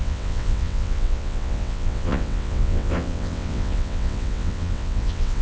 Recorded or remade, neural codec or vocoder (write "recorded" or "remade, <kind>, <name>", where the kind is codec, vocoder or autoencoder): remade, vocoder, WaveNeXt